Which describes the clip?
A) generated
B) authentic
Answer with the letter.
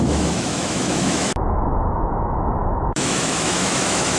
A